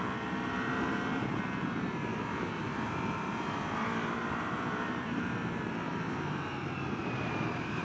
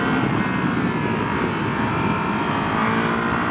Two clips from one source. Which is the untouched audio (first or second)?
second